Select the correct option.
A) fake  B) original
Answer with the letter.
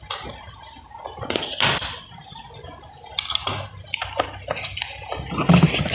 B